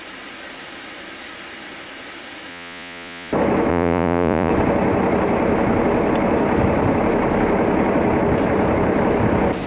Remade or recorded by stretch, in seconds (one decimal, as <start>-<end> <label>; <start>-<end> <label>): 0.0-2.5 recorded; 2.5-3.3 remade; 3.3-3.7 recorded; 3.7-4.5 remade; 4.5-9.7 recorded